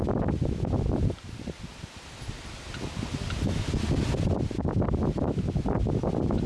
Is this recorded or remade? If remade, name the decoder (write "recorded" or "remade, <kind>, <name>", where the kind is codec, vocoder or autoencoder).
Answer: recorded